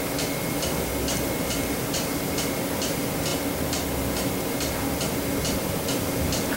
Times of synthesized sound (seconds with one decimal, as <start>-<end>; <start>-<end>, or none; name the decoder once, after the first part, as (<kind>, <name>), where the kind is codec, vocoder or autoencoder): none